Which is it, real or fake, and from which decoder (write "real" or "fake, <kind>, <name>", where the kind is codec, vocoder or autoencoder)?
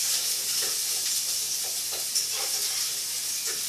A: real